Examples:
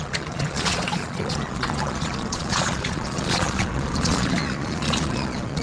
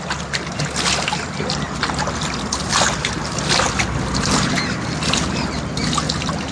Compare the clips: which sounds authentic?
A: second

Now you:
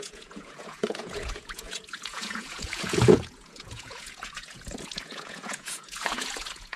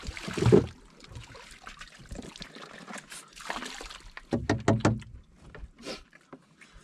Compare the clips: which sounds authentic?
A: second